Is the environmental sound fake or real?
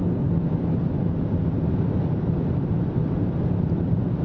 real